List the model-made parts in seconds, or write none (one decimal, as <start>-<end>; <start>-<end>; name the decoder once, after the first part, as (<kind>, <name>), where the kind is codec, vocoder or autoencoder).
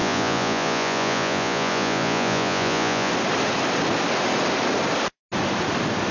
0.0-3.1 (vocoder, Vocos)